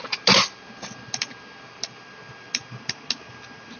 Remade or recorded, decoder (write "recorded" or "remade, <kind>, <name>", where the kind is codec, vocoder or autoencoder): recorded